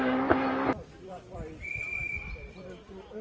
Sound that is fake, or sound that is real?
real